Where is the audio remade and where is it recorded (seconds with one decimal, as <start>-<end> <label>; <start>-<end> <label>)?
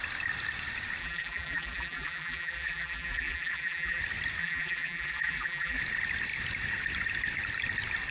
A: 0.0-1.0 recorded; 1.0-4.0 remade; 4.0-4.4 recorded; 4.4-5.8 remade; 5.8-8.1 recorded